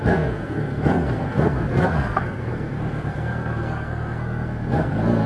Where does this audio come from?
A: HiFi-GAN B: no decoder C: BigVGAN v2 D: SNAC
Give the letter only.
D